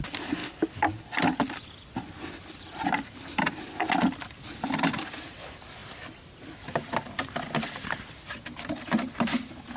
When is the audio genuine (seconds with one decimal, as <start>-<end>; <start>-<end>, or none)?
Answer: 0.0-9.8